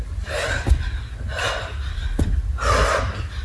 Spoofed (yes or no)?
no